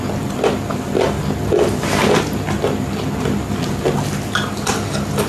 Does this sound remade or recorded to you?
recorded